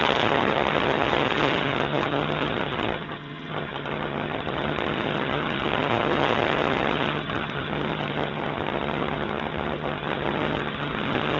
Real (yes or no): no